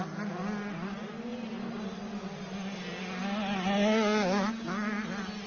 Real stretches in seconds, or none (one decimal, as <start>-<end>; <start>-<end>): 0.0-5.5